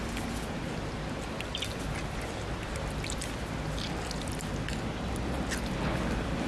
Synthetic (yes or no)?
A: no